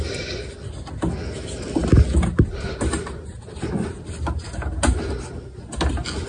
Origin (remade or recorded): recorded